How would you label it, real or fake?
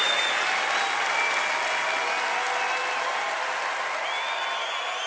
real